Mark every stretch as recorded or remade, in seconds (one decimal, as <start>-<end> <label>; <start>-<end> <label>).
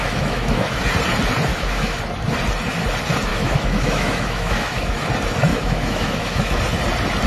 0.0-0.8 remade; 0.8-1.5 recorded; 1.5-2.0 remade; 2.0-3.3 recorded; 3.3-5.1 remade; 5.1-5.5 recorded; 5.5-6.6 remade; 6.6-7.3 recorded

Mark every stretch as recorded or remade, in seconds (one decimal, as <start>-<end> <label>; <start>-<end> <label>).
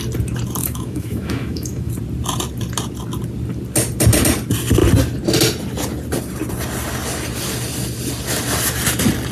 0.0-0.6 recorded; 0.6-1.9 remade; 1.9-9.3 recorded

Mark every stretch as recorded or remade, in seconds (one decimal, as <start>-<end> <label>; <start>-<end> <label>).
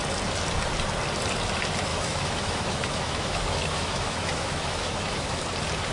0.0-1.9 recorded; 1.9-5.4 remade; 5.4-5.9 recorded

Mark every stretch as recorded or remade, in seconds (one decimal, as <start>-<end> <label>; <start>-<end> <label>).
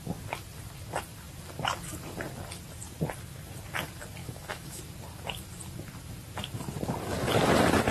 0.0-4.2 recorded; 4.2-4.8 remade; 4.8-7.9 recorded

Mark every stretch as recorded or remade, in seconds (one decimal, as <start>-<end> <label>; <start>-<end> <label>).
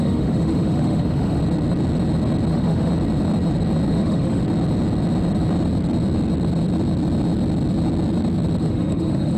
0.0-1.4 remade; 1.4-2.5 recorded; 2.5-2.9 remade; 2.9-3.9 recorded; 3.9-4.4 remade; 4.4-8.6 recorded; 8.6-9.4 remade